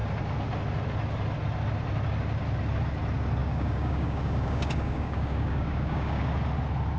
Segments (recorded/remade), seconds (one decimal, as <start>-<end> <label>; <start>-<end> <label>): 0.0-3.4 recorded; 3.4-6.3 remade; 6.3-7.0 recorded